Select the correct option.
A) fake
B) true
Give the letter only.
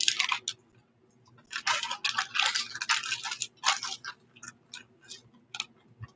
B